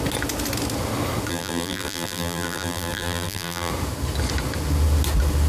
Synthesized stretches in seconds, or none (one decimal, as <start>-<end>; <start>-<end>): 1.3-3.7